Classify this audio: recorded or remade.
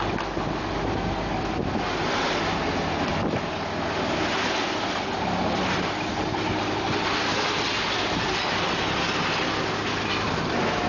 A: recorded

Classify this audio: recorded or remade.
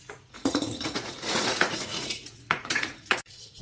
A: remade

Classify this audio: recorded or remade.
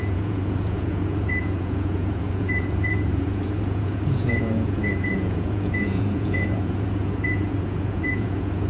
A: remade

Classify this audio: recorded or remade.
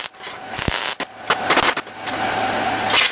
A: recorded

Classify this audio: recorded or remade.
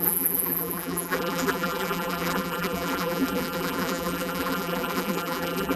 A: remade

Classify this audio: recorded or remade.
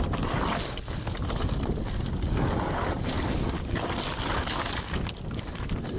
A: recorded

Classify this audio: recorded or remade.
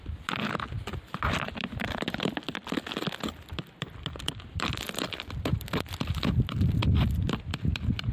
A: recorded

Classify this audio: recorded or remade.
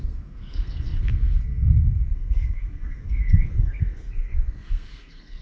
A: remade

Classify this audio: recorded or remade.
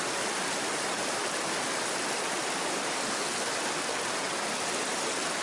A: recorded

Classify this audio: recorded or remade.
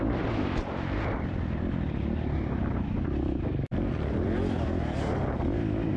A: remade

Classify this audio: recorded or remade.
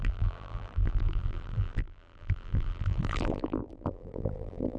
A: remade